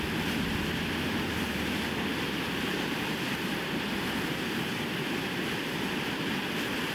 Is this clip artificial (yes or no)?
yes